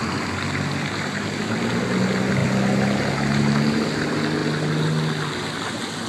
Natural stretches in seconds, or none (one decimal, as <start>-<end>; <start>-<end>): 0.0-6.1